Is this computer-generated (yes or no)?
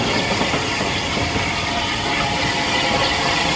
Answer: no